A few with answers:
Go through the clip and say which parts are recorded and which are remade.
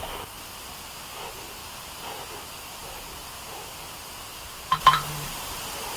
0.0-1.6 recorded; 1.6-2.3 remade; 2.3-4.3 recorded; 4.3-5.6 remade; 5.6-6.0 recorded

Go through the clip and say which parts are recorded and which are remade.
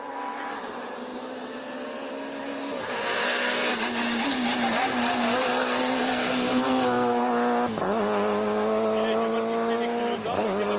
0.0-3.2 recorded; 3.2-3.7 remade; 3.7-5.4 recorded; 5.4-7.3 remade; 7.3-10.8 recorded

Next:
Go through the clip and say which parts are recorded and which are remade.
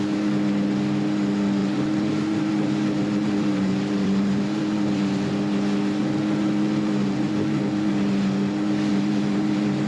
0.0-1.6 recorded; 1.6-5.3 remade; 5.3-6.0 recorded; 6.0-7.9 remade; 7.9-8.9 recorded; 8.9-9.9 remade